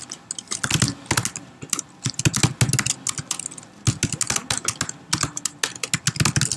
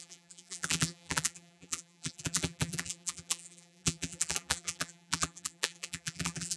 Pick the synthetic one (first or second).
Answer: second